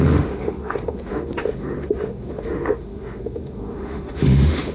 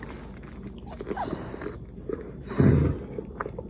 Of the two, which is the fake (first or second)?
first